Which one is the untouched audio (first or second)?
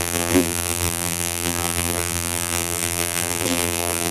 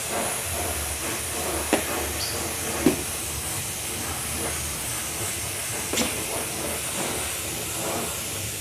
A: second